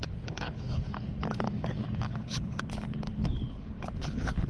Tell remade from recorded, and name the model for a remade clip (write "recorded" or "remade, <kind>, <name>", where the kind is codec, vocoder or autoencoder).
remade, codec, HILCodec